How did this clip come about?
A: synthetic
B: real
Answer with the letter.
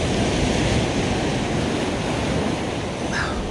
B